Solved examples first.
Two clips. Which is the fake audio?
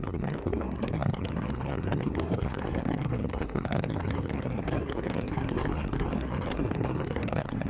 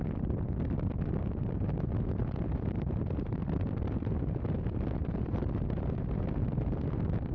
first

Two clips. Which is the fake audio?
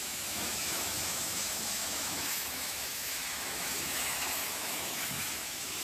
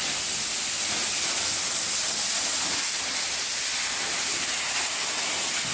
first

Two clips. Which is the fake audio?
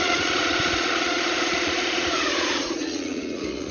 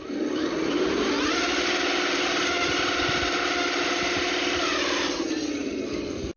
first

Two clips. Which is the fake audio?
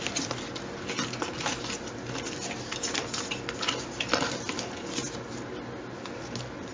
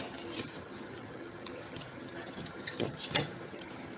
second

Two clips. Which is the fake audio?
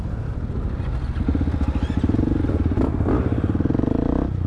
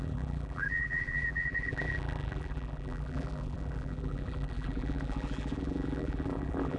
second